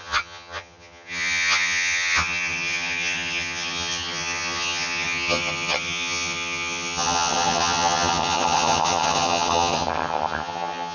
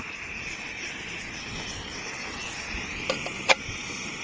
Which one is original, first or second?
second